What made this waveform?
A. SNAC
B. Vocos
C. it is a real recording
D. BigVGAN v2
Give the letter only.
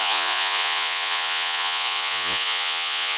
B